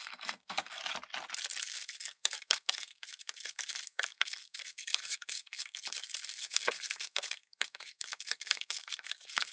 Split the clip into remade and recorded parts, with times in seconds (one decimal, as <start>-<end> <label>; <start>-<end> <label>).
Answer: 0.0-0.8 remade; 0.8-1.6 recorded; 1.6-9.5 remade

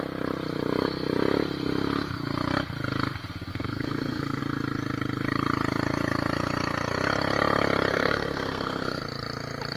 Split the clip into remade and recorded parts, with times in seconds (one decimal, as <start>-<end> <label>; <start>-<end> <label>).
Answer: 0.0-3.5 recorded; 3.5-4.4 remade; 4.4-7.9 recorded; 7.9-9.0 remade; 9.0-9.8 recorded

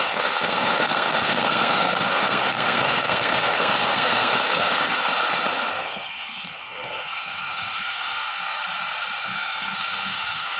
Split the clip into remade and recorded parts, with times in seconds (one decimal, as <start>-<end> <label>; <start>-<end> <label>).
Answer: 0.0-5.0 remade; 5.0-5.7 recorded; 5.7-8.6 remade; 8.6-9.2 recorded; 9.2-10.6 remade

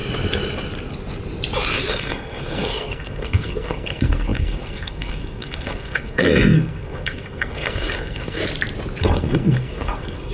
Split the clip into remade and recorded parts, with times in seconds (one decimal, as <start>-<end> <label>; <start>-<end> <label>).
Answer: 0.0-1.9 recorded; 1.9-8.4 remade; 8.4-9.0 recorded; 9.0-10.3 remade

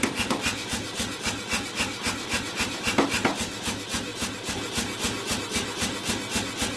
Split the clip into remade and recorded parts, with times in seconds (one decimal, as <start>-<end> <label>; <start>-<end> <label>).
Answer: 0.0-6.8 recorded

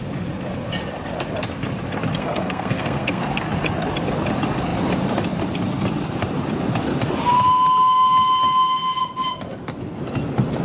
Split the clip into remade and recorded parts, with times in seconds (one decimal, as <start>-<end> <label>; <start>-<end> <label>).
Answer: 0.0-2.2 recorded; 2.2-3.2 remade; 3.2-10.6 recorded

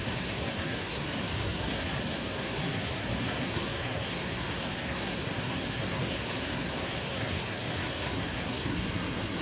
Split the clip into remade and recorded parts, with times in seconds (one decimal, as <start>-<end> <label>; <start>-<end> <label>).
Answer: 0.0-9.4 remade